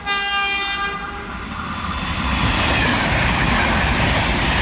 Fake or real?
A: real